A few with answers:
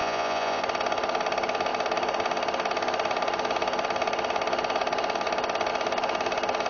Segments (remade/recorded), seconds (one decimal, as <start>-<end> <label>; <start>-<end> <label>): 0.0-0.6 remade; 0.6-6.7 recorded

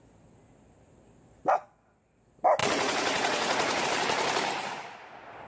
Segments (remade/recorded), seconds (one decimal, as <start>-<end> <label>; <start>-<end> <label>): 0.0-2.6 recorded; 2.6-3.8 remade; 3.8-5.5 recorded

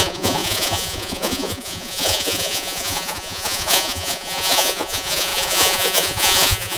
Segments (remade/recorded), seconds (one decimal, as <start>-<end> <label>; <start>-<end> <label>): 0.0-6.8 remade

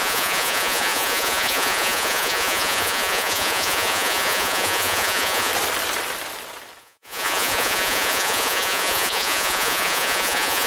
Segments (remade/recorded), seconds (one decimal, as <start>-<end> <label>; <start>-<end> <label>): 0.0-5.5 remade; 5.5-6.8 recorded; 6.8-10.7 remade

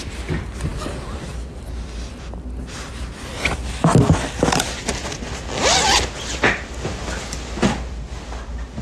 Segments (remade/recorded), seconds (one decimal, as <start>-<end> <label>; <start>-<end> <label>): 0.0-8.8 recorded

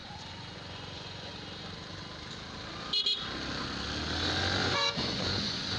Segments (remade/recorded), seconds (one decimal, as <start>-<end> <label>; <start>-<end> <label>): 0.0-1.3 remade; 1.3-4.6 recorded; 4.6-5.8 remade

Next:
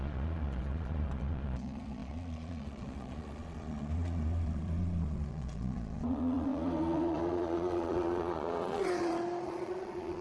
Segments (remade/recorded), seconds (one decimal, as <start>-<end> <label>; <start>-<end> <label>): 0.0-10.2 remade